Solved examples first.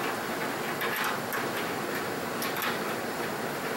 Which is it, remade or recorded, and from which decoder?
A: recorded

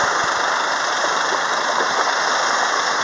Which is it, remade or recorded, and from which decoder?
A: recorded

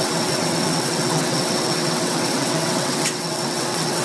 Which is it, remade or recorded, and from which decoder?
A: remade, vocoder, WaveNeXt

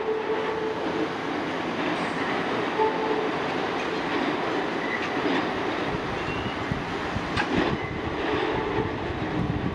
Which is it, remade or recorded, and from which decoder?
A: recorded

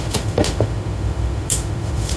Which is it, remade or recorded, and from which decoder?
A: remade, autoencoder, DAC-VAE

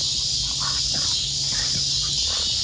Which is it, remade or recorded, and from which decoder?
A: recorded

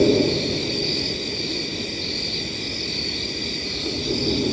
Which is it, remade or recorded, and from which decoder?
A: recorded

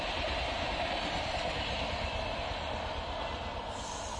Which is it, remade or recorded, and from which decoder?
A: recorded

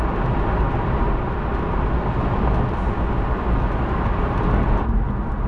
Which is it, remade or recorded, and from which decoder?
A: recorded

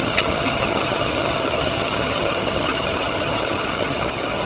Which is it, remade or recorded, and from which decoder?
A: remade, vocoder, HiFi-GAN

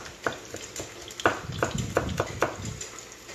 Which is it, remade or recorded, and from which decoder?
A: recorded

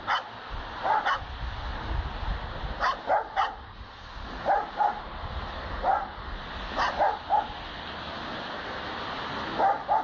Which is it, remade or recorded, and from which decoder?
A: recorded